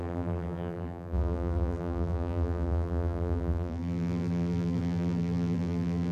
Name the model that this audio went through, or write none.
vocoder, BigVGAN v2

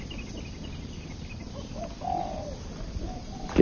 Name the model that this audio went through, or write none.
none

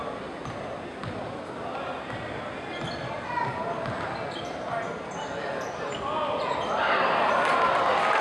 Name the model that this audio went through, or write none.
none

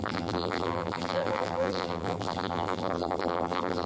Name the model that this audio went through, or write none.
vocoder, BigVGAN v2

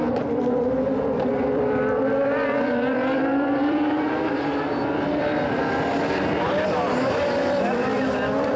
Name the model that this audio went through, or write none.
vocoder, BigVGAN v2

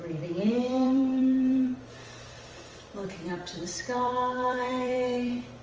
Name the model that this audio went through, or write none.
vocoder, BigVGAN v2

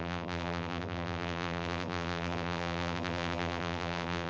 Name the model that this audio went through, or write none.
vocoder, BigVGAN v2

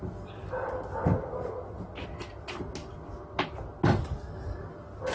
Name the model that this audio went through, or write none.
none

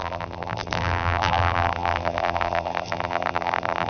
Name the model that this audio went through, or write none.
vocoder, BigVGAN v2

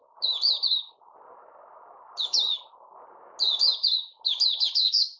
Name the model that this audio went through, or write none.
none